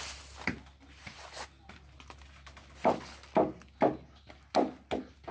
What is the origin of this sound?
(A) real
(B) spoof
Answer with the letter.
A